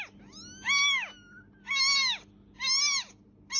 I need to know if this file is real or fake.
real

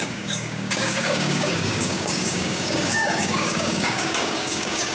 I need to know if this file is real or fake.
fake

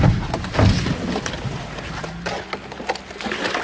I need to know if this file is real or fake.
real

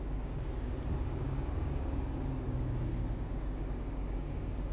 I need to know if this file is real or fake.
fake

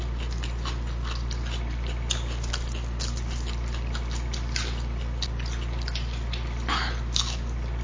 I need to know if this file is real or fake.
real